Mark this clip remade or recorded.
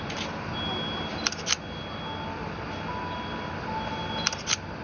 recorded